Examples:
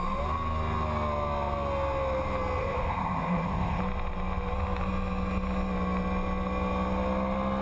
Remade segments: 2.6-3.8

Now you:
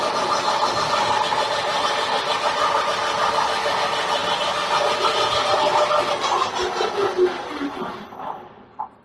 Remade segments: none